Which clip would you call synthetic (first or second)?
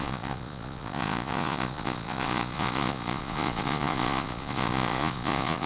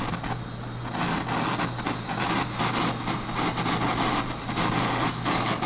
first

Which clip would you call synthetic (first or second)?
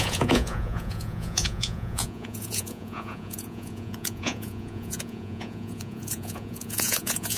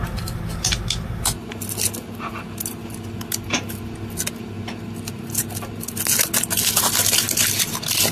first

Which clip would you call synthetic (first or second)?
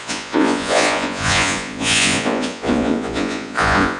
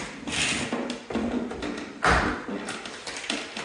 first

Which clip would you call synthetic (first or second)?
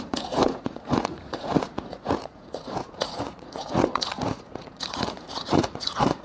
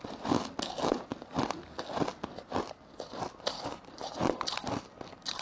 first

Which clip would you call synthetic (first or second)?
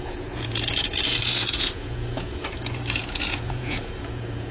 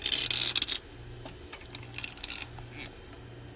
first